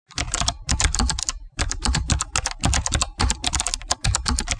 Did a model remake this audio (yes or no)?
no